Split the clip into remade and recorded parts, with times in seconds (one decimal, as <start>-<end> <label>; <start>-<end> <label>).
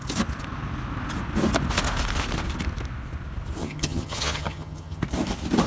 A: 0.0-3.6 recorded; 3.6-5.0 remade; 5.0-5.7 recorded